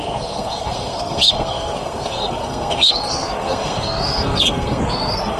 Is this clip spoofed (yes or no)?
yes